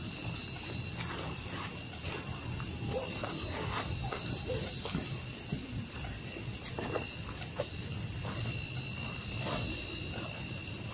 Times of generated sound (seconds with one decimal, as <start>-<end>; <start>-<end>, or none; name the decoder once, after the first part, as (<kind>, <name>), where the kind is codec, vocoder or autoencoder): none